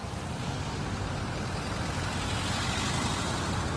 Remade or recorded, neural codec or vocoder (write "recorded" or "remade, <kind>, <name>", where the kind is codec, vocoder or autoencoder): recorded